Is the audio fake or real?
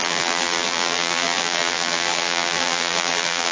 fake